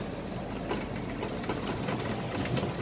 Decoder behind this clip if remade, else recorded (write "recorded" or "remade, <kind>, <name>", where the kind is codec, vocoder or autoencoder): recorded